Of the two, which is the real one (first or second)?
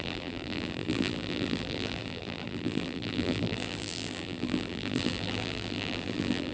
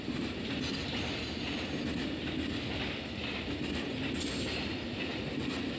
second